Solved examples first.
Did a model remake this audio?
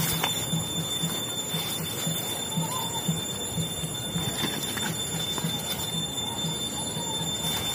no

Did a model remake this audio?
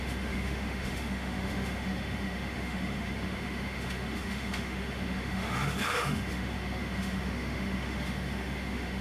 yes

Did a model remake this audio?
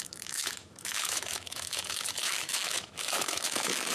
yes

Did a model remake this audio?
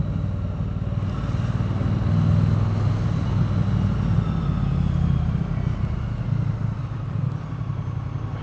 no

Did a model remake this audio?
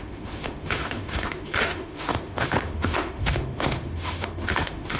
yes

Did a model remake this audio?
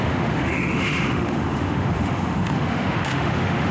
yes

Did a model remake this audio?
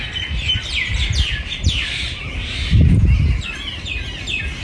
no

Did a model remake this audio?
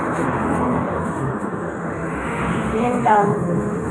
yes